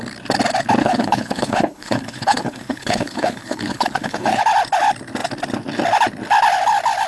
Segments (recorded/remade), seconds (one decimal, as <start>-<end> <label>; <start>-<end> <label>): 0.0-0.8 recorded; 0.8-4.4 remade; 4.4-7.1 recorded